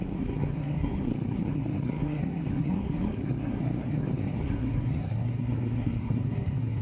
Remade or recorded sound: remade